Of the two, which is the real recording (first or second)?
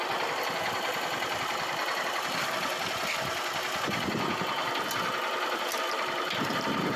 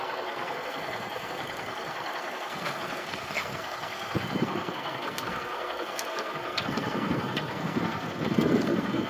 first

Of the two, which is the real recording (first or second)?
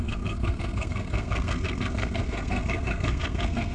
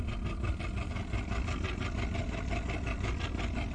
second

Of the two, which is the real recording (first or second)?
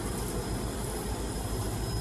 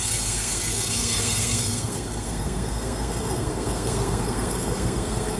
first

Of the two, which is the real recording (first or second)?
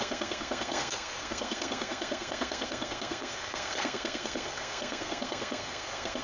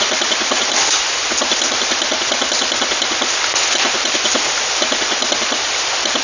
second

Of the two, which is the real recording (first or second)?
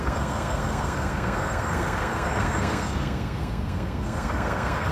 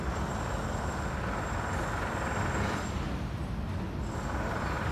second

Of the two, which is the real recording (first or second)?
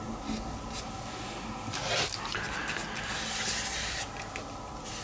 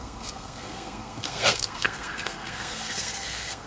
first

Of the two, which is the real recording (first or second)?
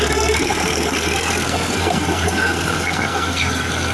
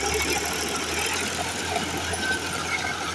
second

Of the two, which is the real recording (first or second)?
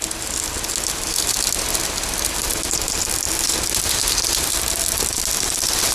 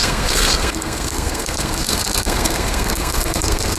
first